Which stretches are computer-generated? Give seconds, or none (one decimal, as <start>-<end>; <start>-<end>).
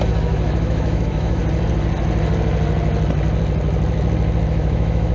0.0-1.4; 4.5-5.1